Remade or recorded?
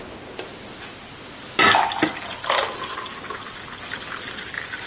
recorded